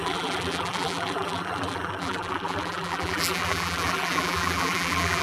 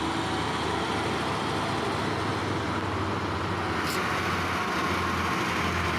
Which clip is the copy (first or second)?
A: first